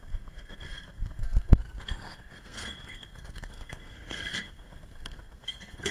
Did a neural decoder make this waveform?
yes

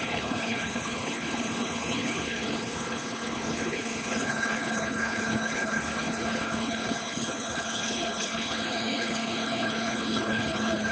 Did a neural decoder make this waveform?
yes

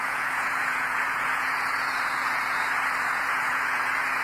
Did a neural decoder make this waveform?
yes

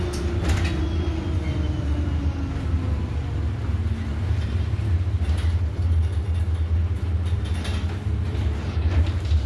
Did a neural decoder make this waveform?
no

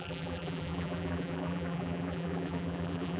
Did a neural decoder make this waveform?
yes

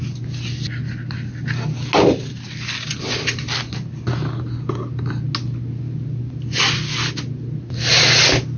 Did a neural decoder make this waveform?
no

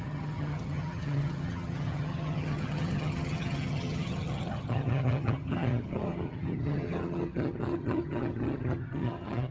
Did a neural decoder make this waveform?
yes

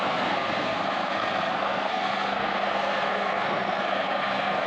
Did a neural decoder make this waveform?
yes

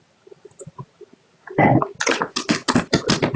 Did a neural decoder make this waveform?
no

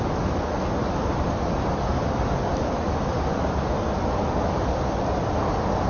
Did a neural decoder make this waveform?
no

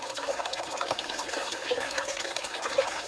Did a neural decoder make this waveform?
yes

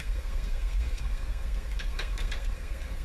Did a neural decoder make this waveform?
yes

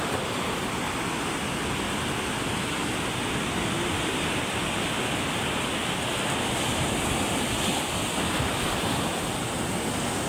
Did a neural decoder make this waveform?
no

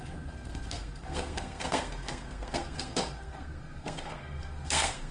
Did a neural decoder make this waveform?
yes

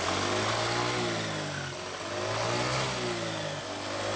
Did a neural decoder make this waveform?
no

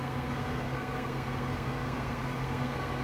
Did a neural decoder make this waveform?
yes